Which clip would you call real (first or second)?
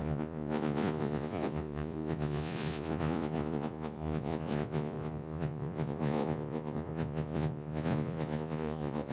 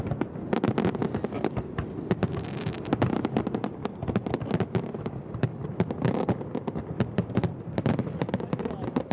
second